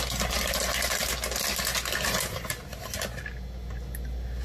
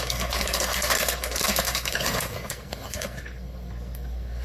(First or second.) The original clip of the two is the first